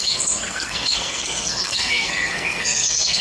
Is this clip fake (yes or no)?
yes